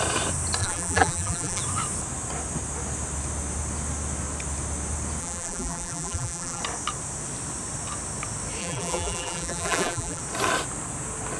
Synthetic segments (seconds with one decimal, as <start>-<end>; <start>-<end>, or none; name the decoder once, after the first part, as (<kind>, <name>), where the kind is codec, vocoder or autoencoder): 0.6-1.6 (vocoder, BigVGAN v2); 5.2-6.6; 8.6-10.2